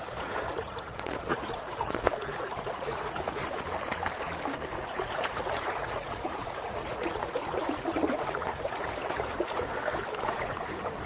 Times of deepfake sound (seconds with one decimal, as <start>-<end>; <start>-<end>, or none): 0.0-3.4; 4.7-9.7; 10.3-11.1